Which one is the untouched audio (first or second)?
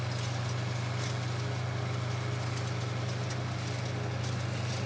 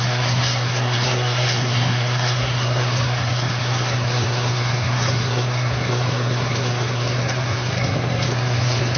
first